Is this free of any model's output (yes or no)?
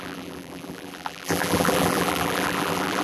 no